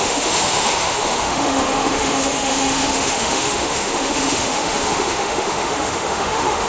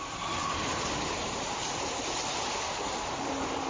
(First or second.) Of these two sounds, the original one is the second